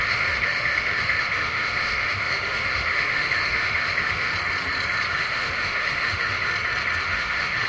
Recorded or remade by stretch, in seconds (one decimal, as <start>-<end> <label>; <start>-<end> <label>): 0.0-4.3 remade; 4.3-5.1 recorded; 5.1-6.5 remade; 6.5-7.0 recorded; 7.0-7.7 remade